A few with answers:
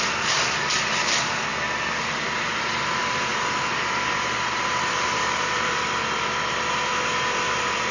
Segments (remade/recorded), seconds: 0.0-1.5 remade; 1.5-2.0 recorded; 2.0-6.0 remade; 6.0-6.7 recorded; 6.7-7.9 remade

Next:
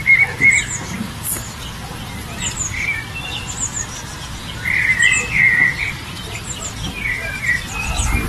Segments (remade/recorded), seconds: 0.0-8.3 recorded

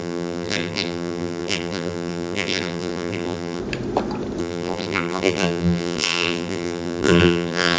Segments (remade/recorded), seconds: 0.0-3.6 remade; 3.6-4.4 recorded; 4.4-7.8 remade